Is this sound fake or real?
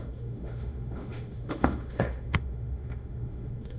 fake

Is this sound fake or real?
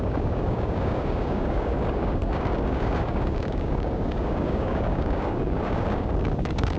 fake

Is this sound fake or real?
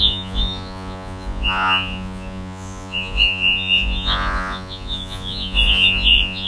fake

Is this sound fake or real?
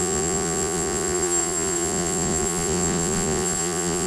fake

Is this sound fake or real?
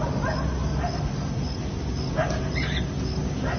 real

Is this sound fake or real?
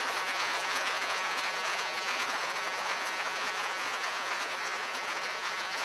fake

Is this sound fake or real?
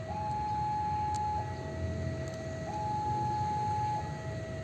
real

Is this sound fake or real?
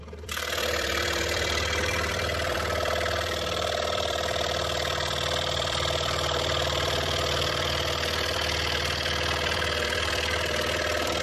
fake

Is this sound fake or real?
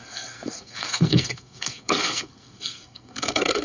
fake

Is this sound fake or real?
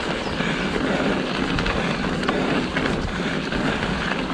real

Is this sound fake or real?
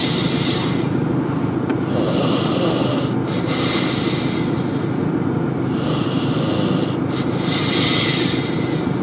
real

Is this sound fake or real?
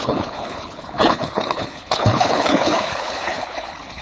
fake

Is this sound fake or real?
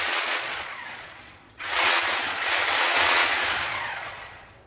fake